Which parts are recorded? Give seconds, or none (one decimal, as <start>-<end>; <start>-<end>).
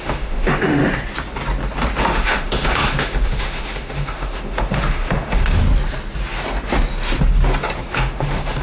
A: 0.8-2.0; 5.6-7.9